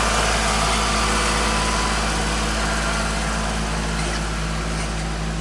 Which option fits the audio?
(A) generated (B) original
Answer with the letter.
B